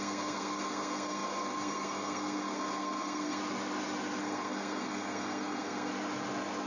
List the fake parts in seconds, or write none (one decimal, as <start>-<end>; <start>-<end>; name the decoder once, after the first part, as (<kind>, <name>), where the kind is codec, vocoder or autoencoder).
0.0-3.4 (codec, SNAC); 4.2-5.9